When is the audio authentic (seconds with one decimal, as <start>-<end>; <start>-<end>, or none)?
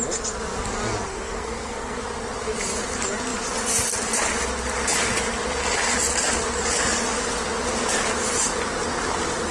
0.0-1.1; 2.0-9.5